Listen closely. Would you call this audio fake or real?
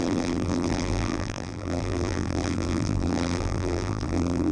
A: fake